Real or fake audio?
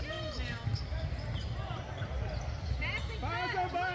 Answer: real